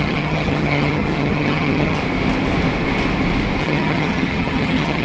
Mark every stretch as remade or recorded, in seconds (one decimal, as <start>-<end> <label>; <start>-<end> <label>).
0.0-2.0 remade; 2.0-3.6 recorded; 3.6-5.0 remade